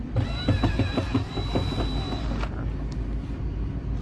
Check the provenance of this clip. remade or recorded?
recorded